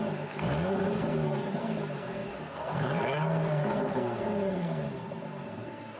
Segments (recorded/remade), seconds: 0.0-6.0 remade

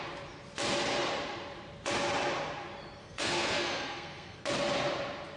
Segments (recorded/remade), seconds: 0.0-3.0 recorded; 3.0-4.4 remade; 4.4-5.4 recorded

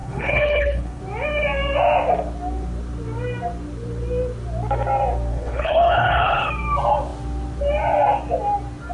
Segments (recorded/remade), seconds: 0.0-1.0 remade; 1.0-5.3 recorded; 5.3-6.5 remade; 6.5-8.9 recorded

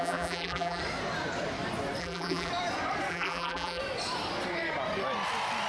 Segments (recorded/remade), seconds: 0.0-0.8 remade; 0.8-2.0 recorded; 2.0-2.5 remade; 2.5-3.1 recorded; 3.1-3.8 remade; 3.8-5.7 recorded

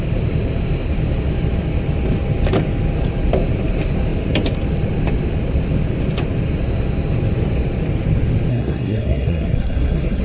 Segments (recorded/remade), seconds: 0.0-8.5 recorded; 8.5-10.2 remade

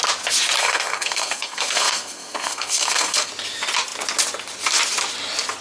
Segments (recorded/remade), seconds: 0.0-0.6 recorded; 0.6-3.3 remade; 3.3-5.6 recorded